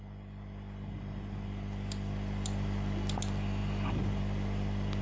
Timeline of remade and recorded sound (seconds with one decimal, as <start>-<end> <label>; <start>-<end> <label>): 0.0-5.0 recorded